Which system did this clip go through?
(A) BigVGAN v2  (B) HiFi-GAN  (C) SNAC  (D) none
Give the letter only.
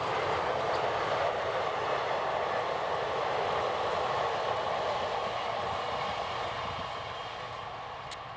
D